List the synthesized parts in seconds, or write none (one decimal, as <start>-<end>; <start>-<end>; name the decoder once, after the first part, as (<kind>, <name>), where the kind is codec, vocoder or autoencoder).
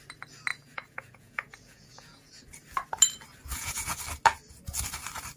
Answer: 0.5-2.4 (vocoder, Vocos); 3.5-4.0